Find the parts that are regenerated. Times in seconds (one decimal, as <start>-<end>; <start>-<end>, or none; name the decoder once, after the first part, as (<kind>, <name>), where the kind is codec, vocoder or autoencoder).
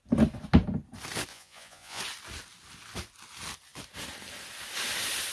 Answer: 1.3-2.0 (vocoder, Vocos)